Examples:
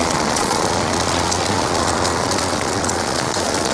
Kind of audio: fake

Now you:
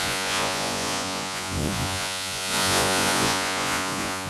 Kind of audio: fake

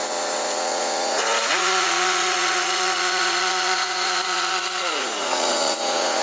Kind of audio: fake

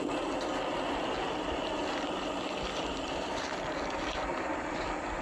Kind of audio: real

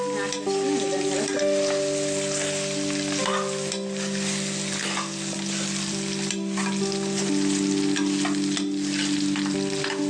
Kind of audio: real